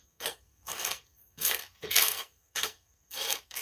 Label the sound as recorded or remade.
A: remade